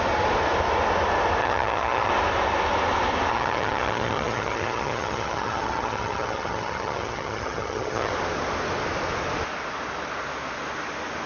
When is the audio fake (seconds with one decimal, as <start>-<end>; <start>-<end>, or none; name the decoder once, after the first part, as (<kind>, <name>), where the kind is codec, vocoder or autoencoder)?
1.4-2.1 (vocoder, HiFi-GAN); 3.3-8.1